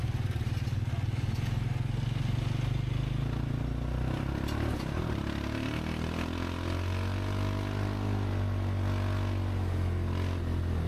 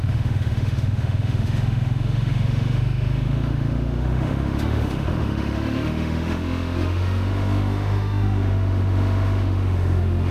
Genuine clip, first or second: first